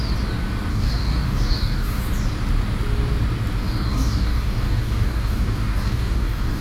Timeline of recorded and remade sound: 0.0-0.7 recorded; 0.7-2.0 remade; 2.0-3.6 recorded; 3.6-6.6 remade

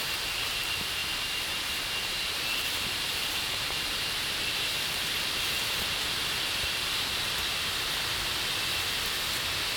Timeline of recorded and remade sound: 0.0-9.8 recorded

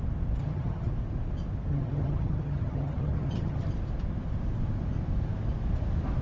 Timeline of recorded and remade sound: 0.0-0.4 recorded; 0.4-0.9 remade; 0.9-1.7 recorded; 1.7-3.7 remade; 3.7-6.2 recorded